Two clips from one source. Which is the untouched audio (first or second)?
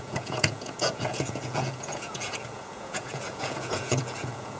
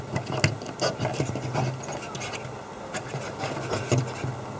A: second